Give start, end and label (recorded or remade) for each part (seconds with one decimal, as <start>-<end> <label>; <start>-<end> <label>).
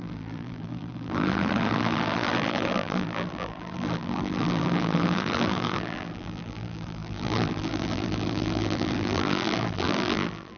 0.0-10.6 remade